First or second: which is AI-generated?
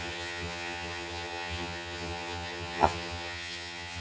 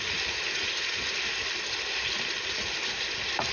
first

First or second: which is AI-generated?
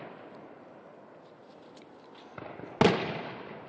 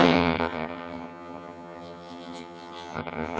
second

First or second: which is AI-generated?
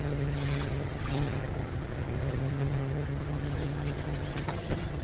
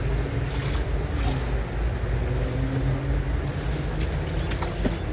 first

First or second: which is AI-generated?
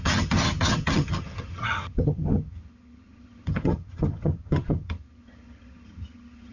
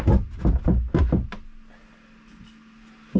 first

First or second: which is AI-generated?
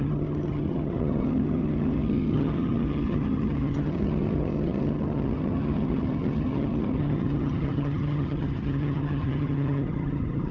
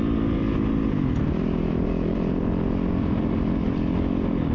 first